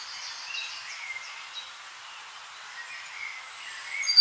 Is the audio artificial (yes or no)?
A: no